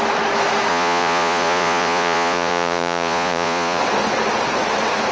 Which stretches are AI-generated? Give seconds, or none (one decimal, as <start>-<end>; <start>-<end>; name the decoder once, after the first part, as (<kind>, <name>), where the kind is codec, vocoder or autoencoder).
0.7-3.8 (vocoder, Vocos)